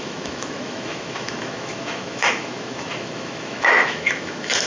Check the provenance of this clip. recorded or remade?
remade